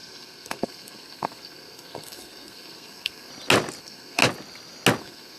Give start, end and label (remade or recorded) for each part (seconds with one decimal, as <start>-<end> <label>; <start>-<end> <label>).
0.0-3.3 remade; 3.3-3.8 recorded; 3.8-4.2 remade; 4.2-5.0 recorded; 5.0-5.4 remade